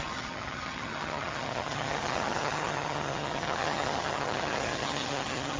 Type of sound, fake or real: fake